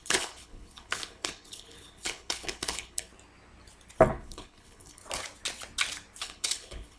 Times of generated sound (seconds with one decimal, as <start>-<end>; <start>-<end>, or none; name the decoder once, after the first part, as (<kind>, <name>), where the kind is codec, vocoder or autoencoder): 0.0-3.1 (codec, HILCodec); 4.1-5.0; 6.2-7.0